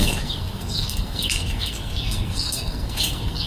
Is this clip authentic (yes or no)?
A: no